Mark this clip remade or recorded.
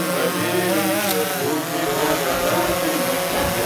recorded